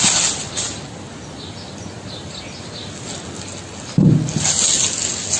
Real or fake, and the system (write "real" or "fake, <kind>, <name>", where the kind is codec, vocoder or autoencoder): real